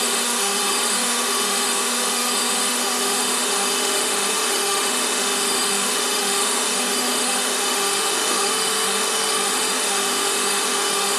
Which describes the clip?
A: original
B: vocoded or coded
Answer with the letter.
B